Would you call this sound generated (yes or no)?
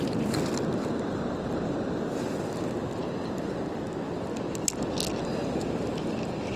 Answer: no